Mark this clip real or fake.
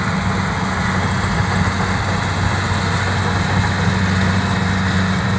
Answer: real